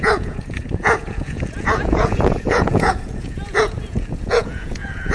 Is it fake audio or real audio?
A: fake